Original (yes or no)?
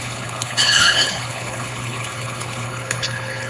no